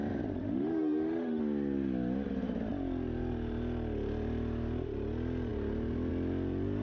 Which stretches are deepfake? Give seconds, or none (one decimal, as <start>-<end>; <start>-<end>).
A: 0.4-1.4